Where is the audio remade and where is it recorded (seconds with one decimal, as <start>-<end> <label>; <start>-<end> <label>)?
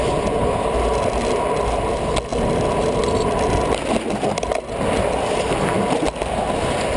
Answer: 0.0-7.0 recorded